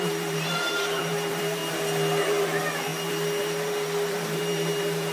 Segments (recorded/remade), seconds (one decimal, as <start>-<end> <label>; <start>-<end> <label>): 0.0-1.6 remade; 1.6-2.2 recorded; 2.2-5.1 remade